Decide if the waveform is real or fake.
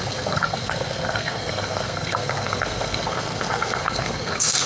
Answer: fake